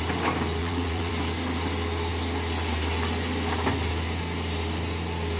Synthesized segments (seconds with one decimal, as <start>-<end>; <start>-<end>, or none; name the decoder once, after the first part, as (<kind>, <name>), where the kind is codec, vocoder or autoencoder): 0.6-1.1 (vocoder, Vocos)